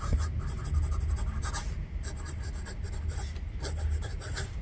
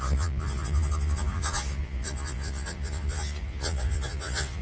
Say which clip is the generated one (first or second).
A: second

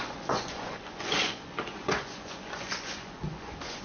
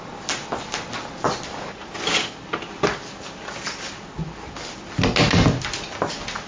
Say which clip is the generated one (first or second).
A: first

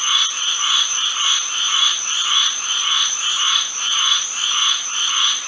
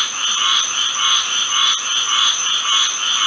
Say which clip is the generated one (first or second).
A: first